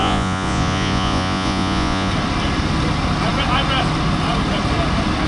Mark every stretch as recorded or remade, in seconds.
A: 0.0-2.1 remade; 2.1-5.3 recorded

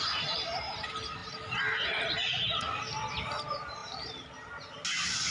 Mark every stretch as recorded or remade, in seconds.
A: 0.0-5.3 recorded

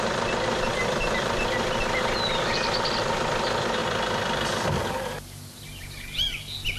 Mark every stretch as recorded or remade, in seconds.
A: 0.0-6.8 recorded